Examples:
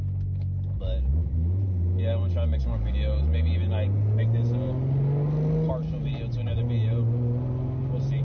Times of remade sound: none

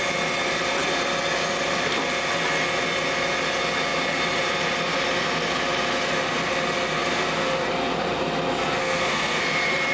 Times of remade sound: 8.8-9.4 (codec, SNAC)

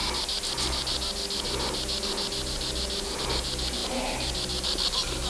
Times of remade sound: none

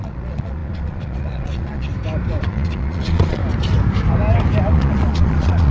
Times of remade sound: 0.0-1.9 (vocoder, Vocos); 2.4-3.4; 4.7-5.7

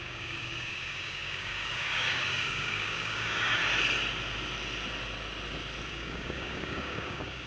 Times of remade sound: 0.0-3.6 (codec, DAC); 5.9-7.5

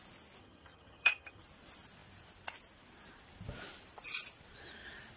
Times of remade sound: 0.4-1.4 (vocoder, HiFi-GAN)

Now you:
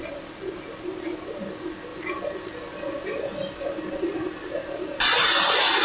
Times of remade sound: none